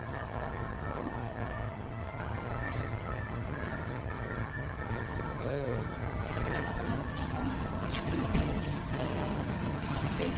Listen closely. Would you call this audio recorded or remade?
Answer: remade